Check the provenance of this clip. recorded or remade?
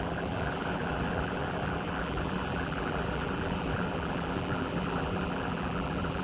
remade